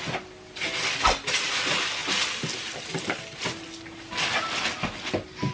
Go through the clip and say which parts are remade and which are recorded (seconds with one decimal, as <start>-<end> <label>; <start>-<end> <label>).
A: 0.0-5.5 recorded